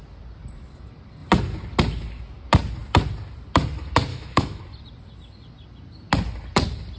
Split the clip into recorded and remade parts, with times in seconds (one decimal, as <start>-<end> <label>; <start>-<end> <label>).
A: 0.0-4.1 recorded; 4.1-4.6 remade; 4.6-7.0 recorded